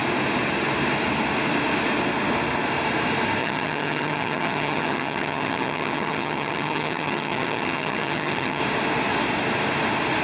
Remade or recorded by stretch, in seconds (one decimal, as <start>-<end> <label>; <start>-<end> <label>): 0.0-3.4 recorded; 3.4-8.6 remade; 8.6-10.2 recorded